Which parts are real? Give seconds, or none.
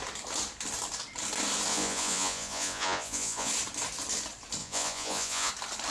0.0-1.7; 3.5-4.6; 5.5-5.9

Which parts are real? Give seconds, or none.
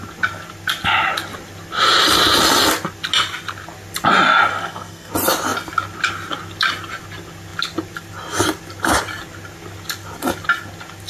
0.0-4.5; 5.1-11.1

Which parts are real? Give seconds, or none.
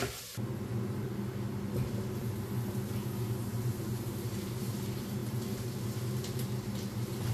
0.0-3.5; 4.8-7.3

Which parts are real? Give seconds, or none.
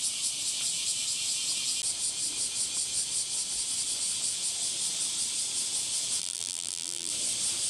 0.0-6.2; 7.1-7.7